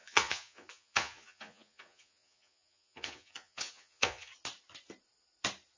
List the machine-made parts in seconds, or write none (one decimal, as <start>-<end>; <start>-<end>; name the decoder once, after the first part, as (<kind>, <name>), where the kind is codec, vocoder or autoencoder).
0.0-4.3 (vocoder, Vocos)